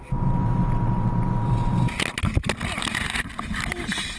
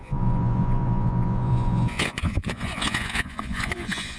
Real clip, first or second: first